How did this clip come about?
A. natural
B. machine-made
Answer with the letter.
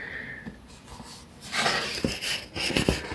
A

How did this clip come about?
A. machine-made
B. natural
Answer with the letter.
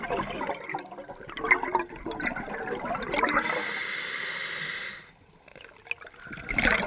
B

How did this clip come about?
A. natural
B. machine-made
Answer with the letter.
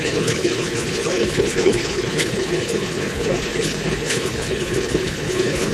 B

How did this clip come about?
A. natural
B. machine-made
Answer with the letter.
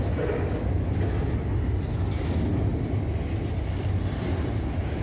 A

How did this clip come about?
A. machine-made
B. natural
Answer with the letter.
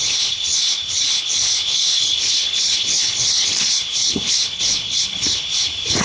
A